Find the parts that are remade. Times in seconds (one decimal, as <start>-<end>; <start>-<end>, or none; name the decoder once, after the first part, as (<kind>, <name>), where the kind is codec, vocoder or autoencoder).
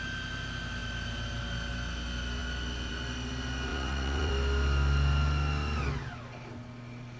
3.7-4.3 (vocoder, Vocos)